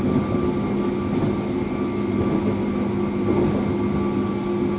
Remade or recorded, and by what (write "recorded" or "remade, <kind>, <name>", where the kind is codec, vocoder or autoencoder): recorded